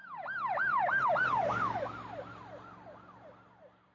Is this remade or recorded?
recorded